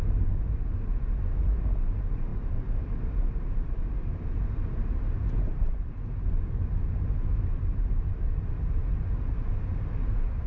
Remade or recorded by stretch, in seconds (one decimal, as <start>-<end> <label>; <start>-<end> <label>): 0.0-2.3 recorded; 2.3-5.8 remade; 5.8-7.3 recorded; 7.3-9.5 remade; 9.5-10.5 recorded